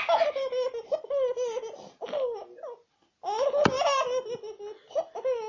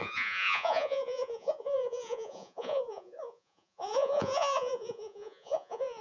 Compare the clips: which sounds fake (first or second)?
second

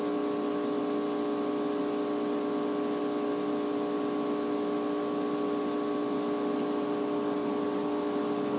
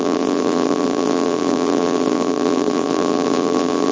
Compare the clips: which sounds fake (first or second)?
second